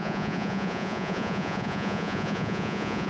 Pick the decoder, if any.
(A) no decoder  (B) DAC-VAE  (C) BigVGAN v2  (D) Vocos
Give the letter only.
D